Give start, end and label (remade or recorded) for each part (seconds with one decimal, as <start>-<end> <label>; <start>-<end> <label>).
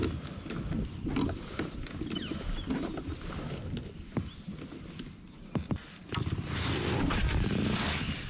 0.0-8.3 recorded